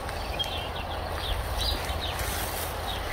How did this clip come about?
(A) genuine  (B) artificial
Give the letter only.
A